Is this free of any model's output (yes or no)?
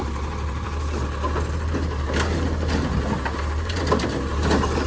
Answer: yes